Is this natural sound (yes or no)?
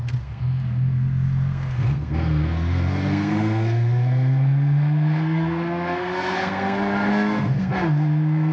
no